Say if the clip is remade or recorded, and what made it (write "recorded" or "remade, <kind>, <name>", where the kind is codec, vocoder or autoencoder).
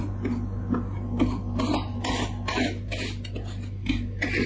recorded